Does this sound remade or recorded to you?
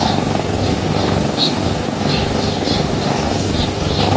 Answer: remade